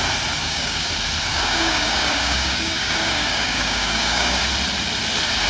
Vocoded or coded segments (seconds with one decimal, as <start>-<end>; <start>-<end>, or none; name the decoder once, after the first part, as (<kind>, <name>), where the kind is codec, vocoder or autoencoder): 0.4-0.9 (codec, DAC); 1.3-4.4